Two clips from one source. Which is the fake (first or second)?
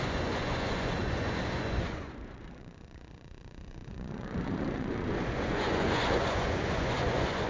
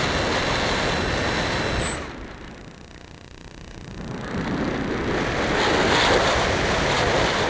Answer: first